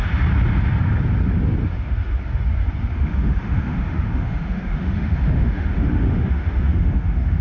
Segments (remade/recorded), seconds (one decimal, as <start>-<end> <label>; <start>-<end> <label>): 0.0-1.6 recorded; 1.6-2.2 remade; 2.2-2.9 recorded; 2.9-7.4 remade